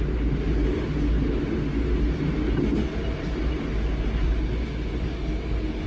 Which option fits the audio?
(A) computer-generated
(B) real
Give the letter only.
B